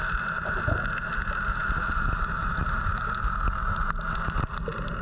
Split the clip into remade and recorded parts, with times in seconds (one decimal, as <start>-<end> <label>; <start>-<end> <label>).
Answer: 0.0-5.0 recorded